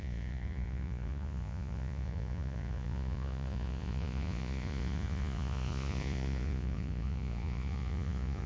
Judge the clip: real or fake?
fake